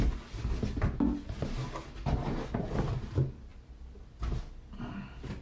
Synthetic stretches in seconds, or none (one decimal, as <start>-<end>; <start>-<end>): none